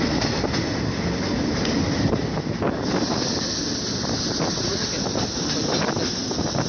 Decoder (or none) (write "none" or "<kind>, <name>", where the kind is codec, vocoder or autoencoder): none